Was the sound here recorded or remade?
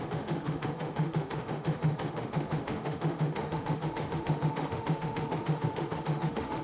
remade